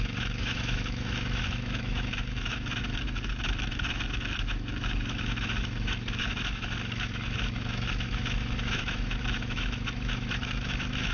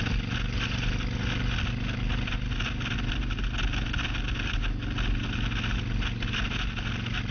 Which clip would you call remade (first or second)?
first